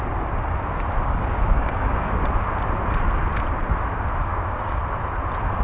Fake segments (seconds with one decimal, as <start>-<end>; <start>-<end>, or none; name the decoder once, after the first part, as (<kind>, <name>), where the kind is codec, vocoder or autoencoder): 1.0-2.2 (codec, DAC); 4.2-4.8